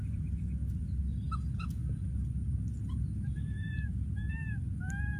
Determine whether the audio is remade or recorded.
recorded